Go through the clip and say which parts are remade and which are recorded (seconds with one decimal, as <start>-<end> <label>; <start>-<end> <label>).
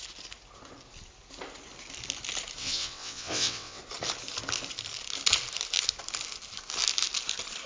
0.0-2.6 recorded; 2.6-3.8 remade; 3.8-7.7 recorded